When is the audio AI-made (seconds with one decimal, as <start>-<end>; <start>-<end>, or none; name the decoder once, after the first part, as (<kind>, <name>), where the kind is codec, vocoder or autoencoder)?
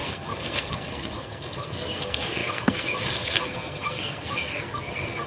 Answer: 0.0-5.3 (codec, SNAC)